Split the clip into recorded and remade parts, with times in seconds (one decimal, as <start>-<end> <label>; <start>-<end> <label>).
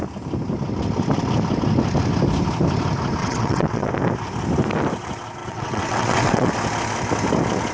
0.0-3.2 recorded; 3.2-3.9 remade; 3.9-5.4 recorded; 5.4-6.5 remade; 6.5-7.7 recorded